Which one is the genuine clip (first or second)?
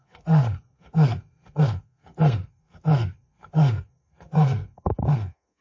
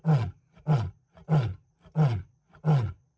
second